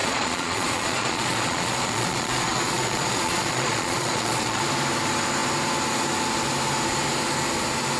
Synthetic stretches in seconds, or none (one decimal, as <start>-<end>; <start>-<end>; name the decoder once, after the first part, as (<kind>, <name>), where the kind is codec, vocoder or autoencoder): 0.0-4.6 (vocoder, Vocos)